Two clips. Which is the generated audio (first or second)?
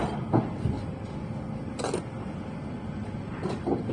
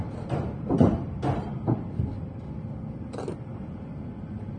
second